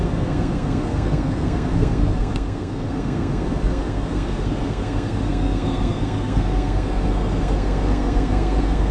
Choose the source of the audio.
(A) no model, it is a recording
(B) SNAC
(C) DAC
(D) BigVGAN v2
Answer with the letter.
B